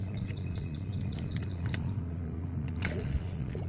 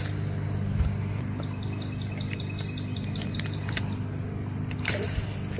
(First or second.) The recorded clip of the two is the second